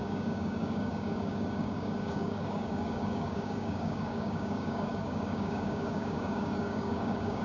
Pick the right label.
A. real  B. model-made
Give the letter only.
B